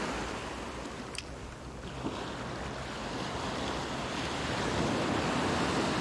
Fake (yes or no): no